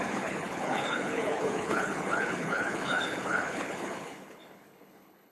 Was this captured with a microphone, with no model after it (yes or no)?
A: no